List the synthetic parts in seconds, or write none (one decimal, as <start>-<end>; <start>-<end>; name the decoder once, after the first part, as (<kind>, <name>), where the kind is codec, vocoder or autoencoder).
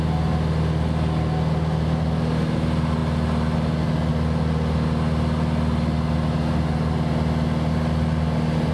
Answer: none